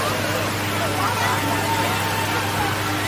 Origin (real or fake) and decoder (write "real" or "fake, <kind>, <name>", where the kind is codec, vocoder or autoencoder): real